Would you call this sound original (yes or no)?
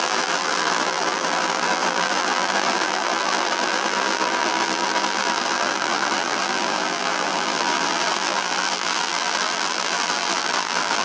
no